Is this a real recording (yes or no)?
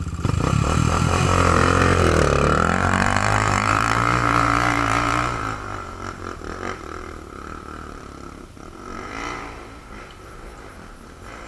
no